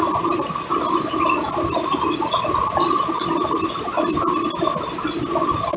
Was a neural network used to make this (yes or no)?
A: no